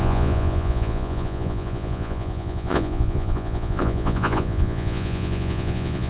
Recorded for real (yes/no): no